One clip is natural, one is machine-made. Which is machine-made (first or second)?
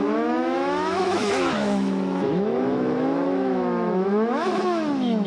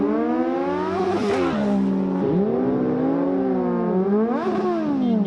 first